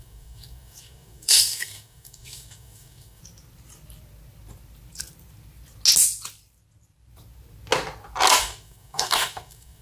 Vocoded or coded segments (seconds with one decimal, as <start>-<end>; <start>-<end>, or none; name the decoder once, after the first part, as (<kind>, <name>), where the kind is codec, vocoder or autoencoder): 0.0-3.2 (codec, DAC); 8.4-9.8